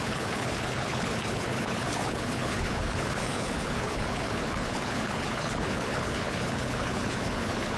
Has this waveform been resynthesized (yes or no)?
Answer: yes